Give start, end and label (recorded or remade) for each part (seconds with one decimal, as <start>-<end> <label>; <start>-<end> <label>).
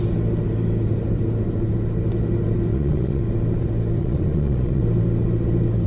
0.0-2.7 recorded; 2.7-3.2 remade; 3.2-4.0 recorded; 4.0-4.8 remade; 4.8-5.9 recorded